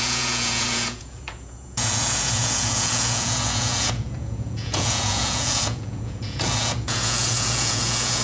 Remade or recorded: remade